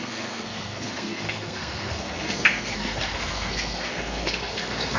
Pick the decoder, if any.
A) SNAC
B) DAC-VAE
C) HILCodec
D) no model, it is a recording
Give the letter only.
A